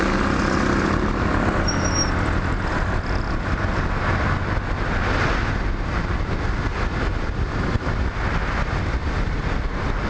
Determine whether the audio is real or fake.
real